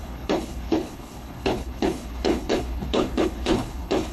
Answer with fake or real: fake